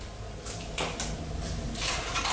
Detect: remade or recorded recorded